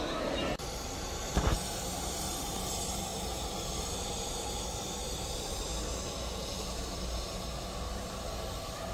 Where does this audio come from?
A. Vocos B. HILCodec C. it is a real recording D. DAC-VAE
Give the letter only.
C